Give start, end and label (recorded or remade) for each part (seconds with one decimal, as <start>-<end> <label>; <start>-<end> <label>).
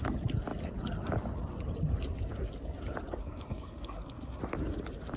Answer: 0.0-3.2 recorded; 3.2-4.4 remade; 4.4-5.2 recorded